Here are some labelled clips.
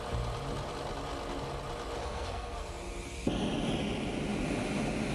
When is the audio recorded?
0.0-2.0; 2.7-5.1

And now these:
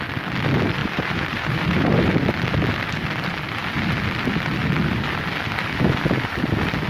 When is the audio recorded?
0.0-0.8; 2.1-6.9

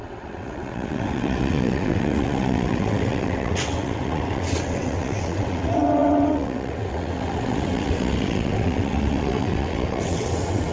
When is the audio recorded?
none

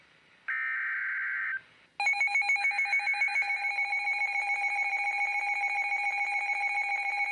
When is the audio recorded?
0.0-1.0; 1.9-2.6

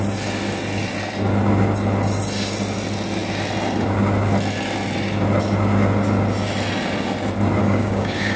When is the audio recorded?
0.0-7.6

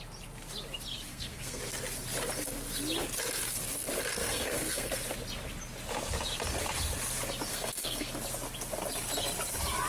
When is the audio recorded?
0.0-1.1; 1.6-4.2; 4.9-7.5; 8.1-9.9